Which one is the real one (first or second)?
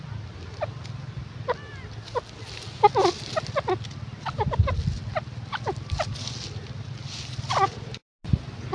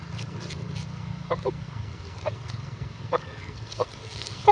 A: first